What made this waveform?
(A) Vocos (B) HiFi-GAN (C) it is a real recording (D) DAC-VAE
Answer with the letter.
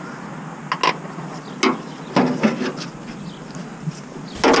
C